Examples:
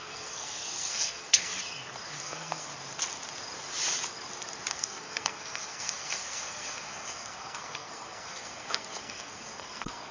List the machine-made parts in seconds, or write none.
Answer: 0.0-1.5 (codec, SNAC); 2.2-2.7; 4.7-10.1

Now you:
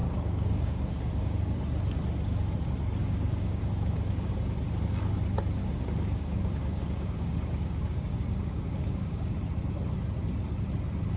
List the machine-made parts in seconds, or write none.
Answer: 0.0-1.6 (codec, DAC); 3.0-4.3; 5.6-9.3

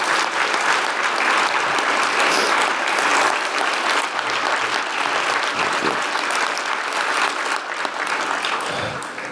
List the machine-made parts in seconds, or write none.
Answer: none

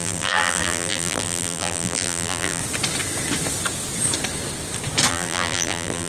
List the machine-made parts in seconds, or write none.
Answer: 0.0-2.6 (vocoder, BigVGAN v2); 5.1-6.1

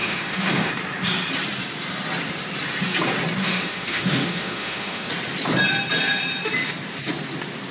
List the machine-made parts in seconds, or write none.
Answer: 0.0-0.7 (autoencoder, DAC-VAE); 3.4-5.1

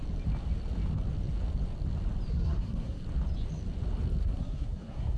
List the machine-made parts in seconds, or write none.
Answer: 2.3-3.0 (codec, SNAC); 4.2-5.2

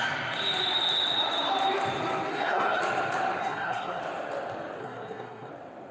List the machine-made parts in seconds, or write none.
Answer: 2.3-2.8 (codec, SNAC); 3.4-4.0; 4.8-5.5

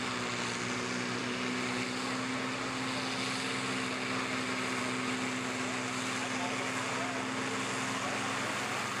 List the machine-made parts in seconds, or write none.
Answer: none